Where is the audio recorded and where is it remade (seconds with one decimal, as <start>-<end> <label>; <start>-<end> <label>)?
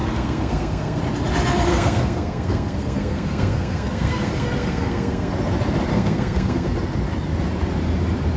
0.0-1.0 remade; 1.0-1.7 recorded; 1.7-5.3 remade; 5.3-5.9 recorded; 5.9-6.7 remade; 6.7-8.4 recorded